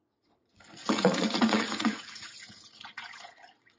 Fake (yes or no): yes